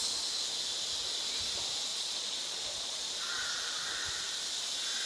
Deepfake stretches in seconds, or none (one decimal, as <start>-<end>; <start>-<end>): 1.9-3.2